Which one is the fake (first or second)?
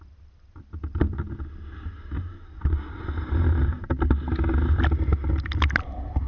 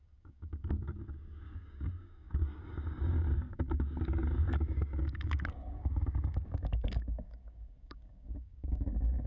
second